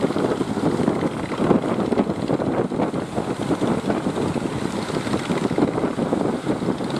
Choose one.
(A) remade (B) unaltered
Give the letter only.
B